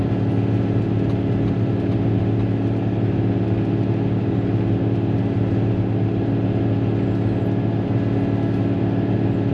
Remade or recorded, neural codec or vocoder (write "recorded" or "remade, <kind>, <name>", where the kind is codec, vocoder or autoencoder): recorded